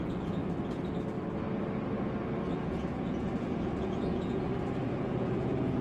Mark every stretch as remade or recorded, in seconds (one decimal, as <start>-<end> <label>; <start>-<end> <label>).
0.0-0.4 remade; 0.4-2.5 recorded; 2.5-4.5 remade; 4.5-5.0 recorded; 5.0-5.8 remade